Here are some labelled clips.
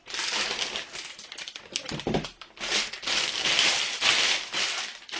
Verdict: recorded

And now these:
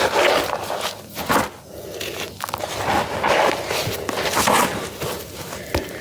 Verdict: recorded